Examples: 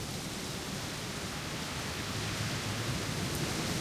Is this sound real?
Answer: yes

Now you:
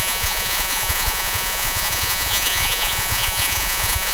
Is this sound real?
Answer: no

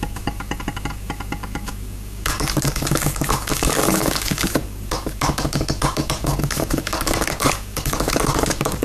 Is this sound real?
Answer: no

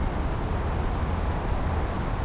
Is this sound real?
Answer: yes